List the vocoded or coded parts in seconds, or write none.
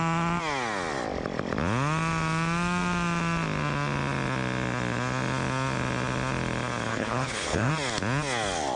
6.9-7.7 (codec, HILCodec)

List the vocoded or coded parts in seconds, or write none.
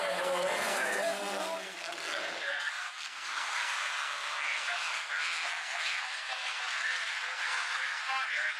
0.0-8.6 (codec, SNAC)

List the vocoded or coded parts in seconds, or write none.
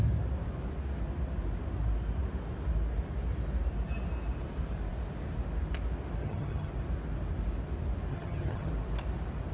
6.2-6.7 (vocoder, HiFi-GAN); 8.1-8.7